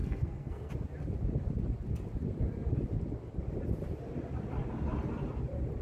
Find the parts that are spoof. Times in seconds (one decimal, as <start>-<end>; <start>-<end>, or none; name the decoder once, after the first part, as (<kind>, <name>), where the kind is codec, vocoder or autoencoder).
0.0-0.7 (codec, SNAC)